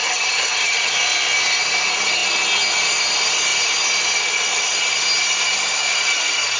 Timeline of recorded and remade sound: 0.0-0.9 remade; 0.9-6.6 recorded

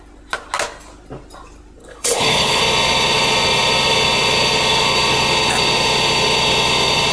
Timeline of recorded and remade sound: 0.0-1.8 recorded; 1.8-2.6 remade; 2.6-7.1 recorded